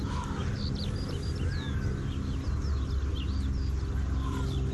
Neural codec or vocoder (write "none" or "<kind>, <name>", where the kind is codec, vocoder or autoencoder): none